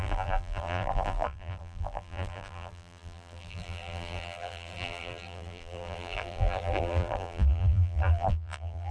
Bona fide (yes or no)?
no